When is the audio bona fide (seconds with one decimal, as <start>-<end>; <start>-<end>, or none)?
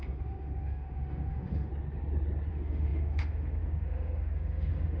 1.7-2.5